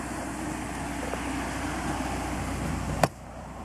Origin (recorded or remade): recorded